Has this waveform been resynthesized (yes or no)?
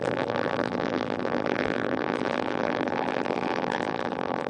yes